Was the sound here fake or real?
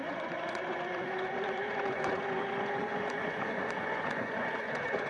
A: fake